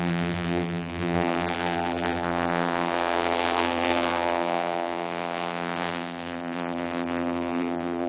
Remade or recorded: remade